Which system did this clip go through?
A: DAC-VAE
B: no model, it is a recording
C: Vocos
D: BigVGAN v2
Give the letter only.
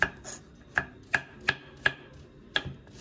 B